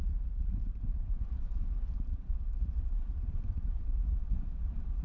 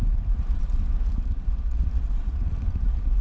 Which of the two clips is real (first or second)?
second